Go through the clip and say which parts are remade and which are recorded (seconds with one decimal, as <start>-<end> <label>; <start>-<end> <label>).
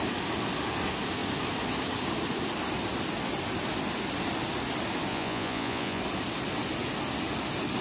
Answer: 0.0-5.1 recorded; 5.1-6.0 remade; 6.0-7.8 recorded